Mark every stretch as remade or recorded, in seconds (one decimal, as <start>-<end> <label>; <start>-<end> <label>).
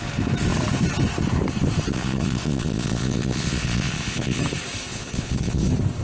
0.0-1.9 recorded; 1.9-4.4 remade; 4.4-4.9 recorded; 4.9-5.6 remade; 5.6-6.0 recorded